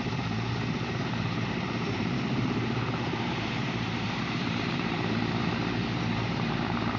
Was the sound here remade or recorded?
remade